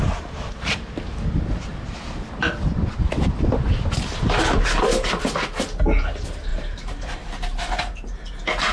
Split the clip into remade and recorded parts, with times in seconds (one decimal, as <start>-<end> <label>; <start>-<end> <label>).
0.0-1.7 recorded; 1.7-2.4 remade; 2.4-6.5 recorded; 6.5-8.2 remade; 8.2-8.7 recorded